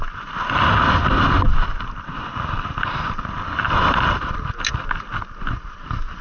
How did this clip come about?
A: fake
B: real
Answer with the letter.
B